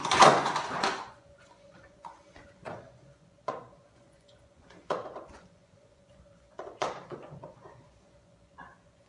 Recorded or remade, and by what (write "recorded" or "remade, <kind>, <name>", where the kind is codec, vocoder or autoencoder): remade, vocoder, Vocos